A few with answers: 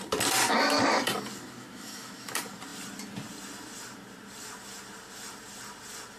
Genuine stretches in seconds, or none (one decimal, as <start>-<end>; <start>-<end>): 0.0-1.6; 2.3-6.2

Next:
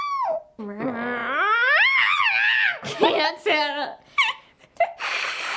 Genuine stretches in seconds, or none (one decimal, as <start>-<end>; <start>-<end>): 0.0-5.6

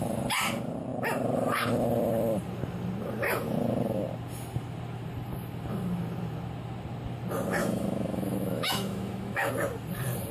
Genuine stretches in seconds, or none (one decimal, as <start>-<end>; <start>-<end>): 0.0-7.6; 9.5-10.3

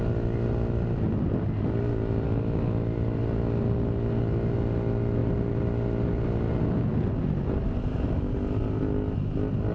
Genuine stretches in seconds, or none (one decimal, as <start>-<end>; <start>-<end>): 0.0-9.7

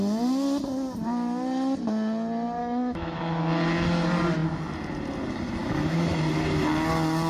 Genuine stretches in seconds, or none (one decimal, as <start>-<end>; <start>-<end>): 0.0-2.6; 3.2-5.6; 6.2-7.3